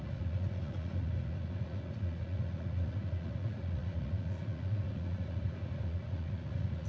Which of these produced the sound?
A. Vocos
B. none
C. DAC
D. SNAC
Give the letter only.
A